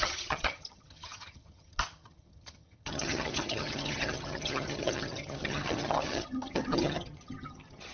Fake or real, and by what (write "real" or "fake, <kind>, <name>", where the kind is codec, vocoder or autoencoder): fake, vocoder, HiFi-GAN